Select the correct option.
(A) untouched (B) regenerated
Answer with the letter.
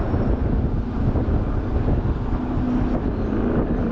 A